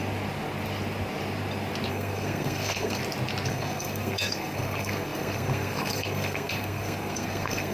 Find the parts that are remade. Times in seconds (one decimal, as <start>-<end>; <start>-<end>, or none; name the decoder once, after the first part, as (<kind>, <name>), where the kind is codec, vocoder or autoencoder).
1.9-3.0 (codec, SNAC); 3.5-7.7